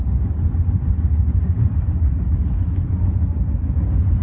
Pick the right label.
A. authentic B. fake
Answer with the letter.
B